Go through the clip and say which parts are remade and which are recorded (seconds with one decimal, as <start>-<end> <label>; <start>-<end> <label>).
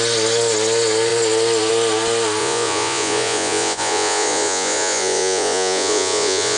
0.0-2.4 recorded; 2.4-6.6 remade